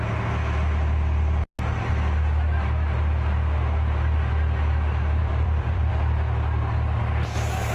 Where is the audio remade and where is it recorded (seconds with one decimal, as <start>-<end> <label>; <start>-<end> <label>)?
0.0-5.2 recorded; 5.2-5.9 remade; 5.9-7.7 recorded